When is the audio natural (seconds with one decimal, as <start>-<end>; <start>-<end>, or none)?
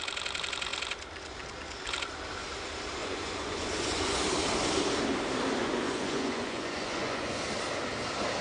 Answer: 0.0-3.0; 4.2-5.6; 7.4-8.4